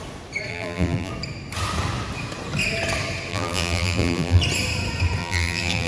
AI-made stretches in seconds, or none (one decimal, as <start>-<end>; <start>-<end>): 0.5-1.1; 3.3-4.4; 5.2-5.9

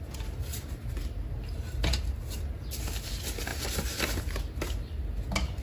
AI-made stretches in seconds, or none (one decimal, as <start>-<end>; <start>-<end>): none